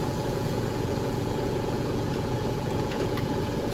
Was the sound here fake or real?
fake